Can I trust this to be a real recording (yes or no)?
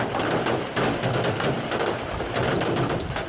no